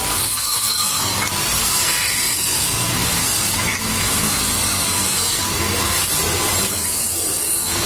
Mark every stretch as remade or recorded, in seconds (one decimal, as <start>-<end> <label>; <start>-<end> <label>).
0.0-1.1 remade; 1.1-1.6 recorded; 1.6-6.0 remade; 6.0-6.7 recorded; 6.7-7.9 remade